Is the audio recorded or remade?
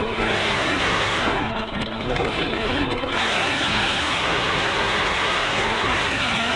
remade